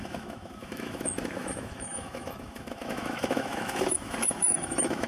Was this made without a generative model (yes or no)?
no